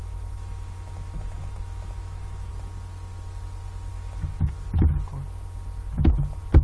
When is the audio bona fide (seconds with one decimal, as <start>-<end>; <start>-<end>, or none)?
2.5-3.9; 4.5-6.6